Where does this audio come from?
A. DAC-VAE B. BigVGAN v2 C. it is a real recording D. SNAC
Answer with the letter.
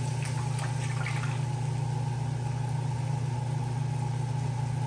C